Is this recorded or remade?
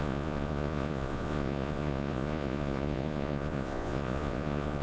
remade